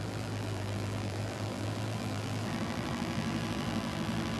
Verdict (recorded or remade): remade